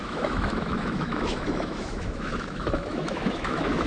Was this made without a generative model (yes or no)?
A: no